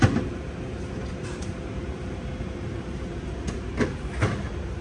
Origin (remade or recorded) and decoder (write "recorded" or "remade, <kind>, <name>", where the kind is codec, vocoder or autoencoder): remade, vocoder, BigVGAN v2